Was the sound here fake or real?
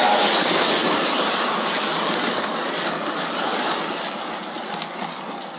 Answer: real